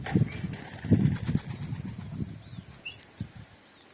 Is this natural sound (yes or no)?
yes